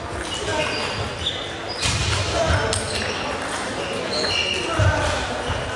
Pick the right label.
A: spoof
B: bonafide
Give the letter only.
B